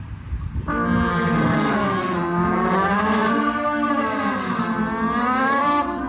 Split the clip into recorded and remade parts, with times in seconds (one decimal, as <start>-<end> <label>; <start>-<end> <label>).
0.0-1.1 recorded; 1.1-4.8 remade; 4.8-5.2 recorded; 5.2-6.1 remade

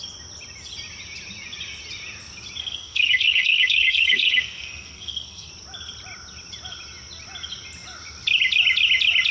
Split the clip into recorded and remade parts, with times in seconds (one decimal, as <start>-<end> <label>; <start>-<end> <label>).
0.0-2.6 recorded; 2.6-5.5 remade; 5.5-9.3 recorded

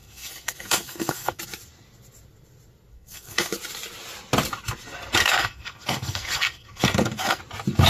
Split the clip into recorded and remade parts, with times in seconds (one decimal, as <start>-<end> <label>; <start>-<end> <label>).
0.0-1.4 remade; 1.4-2.9 recorded; 2.9-3.5 remade; 3.5-5.2 recorded; 5.2-7.4 remade; 7.4-7.9 recorded

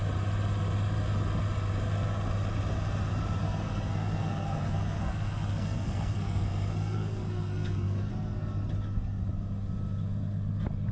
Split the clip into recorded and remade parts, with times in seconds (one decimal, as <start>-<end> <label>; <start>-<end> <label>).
0.0-3.4 recorded; 3.4-8.1 remade; 8.1-10.9 recorded